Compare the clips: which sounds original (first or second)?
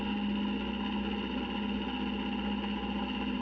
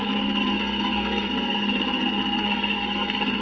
first